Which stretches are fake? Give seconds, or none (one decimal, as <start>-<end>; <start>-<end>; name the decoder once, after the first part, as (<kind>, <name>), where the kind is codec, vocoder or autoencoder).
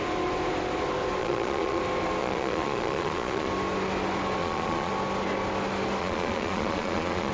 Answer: 1.2-1.8 (vocoder, Vocos); 2.2-3.5; 4.4-4.9; 6.0-7.3